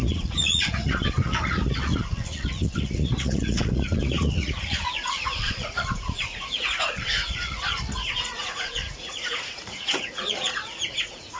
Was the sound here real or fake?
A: fake